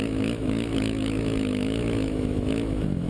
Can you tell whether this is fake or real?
fake